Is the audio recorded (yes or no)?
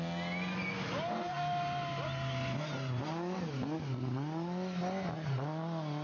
yes